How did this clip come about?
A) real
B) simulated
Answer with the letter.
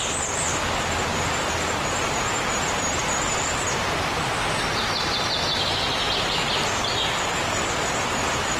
A